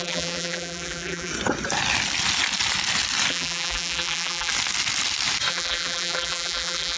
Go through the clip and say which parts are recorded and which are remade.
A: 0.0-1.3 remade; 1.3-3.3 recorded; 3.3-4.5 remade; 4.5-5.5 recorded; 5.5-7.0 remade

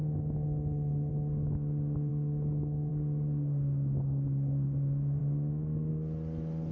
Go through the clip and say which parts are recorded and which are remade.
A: 0.0-1.1 remade; 1.1-2.1 recorded; 2.1-2.9 remade; 2.9-5.2 recorded; 5.2-5.9 remade; 5.9-6.7 recorded

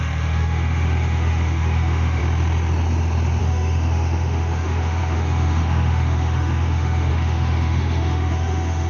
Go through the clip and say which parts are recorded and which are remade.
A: 0.0-2.2 remade; 2.2-3.4 recorded; 3.4-8.9 remade